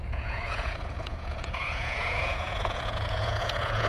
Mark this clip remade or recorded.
remade